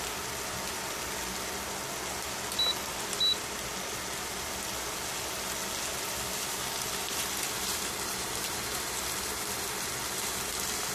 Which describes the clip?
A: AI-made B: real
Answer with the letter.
B